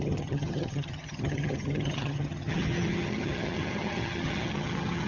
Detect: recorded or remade remade